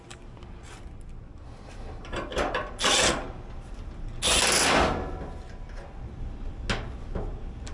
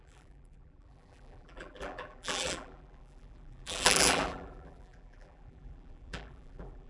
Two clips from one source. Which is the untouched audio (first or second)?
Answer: first